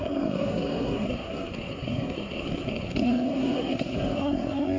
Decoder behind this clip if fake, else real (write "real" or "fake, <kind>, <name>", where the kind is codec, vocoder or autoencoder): fake, codec, SNAC